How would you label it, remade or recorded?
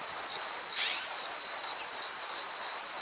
recorded